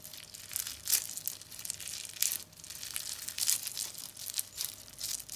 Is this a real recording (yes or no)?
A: yes